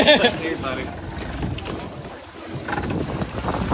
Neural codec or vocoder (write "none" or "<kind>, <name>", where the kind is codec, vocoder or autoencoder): none